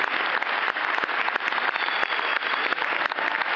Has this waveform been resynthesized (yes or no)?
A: no